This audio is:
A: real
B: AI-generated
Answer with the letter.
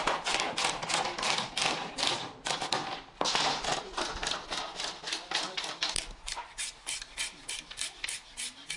B